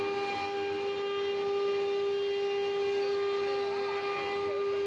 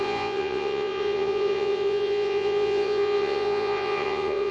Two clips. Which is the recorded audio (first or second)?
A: first